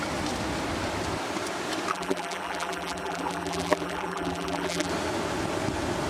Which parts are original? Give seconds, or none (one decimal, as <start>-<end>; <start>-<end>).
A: 0.0-1.9; 4.9-6.1